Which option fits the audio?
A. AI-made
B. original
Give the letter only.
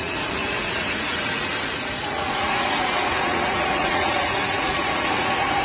A